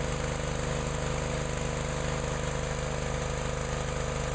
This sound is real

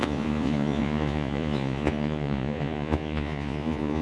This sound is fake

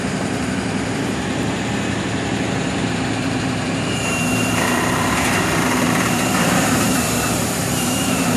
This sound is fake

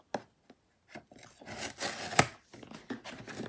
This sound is real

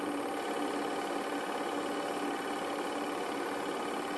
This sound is real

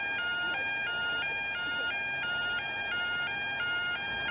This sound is real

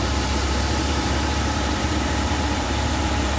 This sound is fake